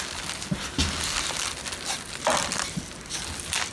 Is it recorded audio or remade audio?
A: recorded